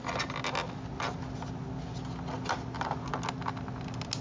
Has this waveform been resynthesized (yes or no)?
no